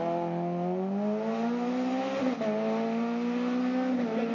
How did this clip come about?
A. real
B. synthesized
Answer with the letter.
A